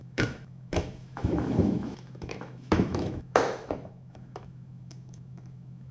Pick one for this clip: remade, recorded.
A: remade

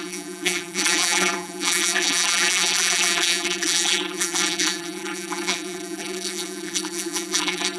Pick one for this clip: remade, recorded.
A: remade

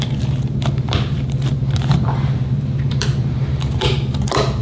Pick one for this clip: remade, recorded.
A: remade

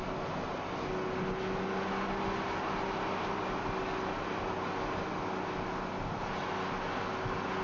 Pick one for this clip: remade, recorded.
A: recorded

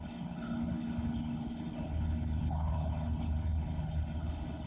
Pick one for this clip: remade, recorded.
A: remade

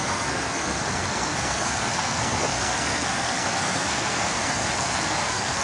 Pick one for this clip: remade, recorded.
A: remade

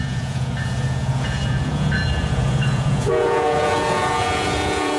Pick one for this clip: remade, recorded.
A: remade